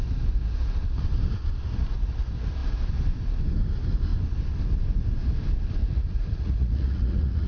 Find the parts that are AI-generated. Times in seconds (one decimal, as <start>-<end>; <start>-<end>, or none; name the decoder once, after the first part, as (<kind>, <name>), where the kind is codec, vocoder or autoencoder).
5.8-7.5 (vocoder, Vocos)